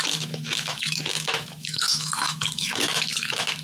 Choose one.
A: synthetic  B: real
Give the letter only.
A